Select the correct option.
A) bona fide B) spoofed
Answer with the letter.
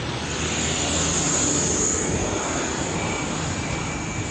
A